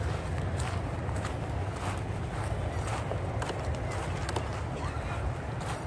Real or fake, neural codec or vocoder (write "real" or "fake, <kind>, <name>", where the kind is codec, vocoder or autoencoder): real